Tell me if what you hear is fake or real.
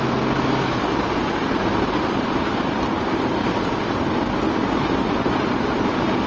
real